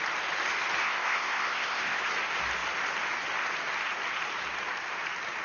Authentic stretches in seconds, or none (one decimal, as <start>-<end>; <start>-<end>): 0.0-0.8; 2.0-5.4